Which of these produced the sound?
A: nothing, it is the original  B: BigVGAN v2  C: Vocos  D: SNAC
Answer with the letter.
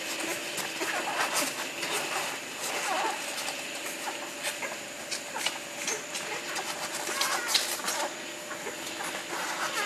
A